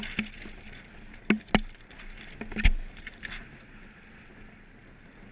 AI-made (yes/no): no